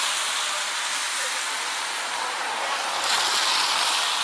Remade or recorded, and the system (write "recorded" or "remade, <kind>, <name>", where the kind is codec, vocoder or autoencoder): recorded